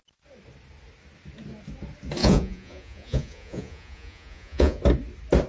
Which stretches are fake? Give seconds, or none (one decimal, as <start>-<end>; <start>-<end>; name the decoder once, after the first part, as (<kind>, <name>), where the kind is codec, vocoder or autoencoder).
2.2-4.8 (vocoder, Vocos)